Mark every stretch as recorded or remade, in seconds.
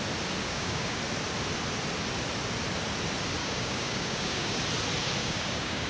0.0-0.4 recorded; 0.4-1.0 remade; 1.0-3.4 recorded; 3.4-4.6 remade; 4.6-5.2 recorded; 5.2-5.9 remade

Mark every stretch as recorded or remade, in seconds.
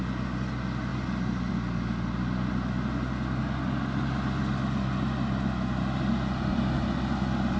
0.0-7.6 recorded